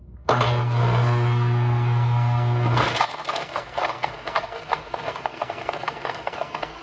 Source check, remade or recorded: remade